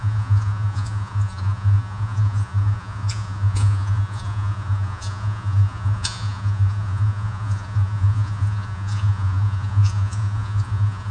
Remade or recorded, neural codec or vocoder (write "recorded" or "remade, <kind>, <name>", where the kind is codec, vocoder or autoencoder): remade, vocoder, Vocos